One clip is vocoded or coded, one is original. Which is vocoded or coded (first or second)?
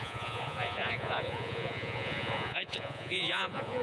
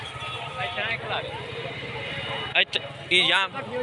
first